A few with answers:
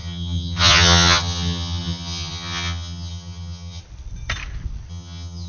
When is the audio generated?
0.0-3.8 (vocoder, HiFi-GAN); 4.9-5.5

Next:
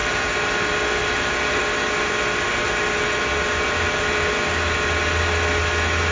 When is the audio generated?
none